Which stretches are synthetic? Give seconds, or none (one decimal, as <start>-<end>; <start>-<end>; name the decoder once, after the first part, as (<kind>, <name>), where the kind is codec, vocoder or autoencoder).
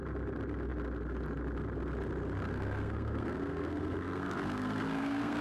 2.5-5.4 (codec, SNAC)